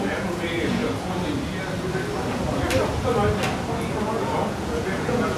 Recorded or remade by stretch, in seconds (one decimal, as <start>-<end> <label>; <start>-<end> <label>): 0.0-0.8 remade; 0.8-4.0 recorded; 4.0-5.4 remade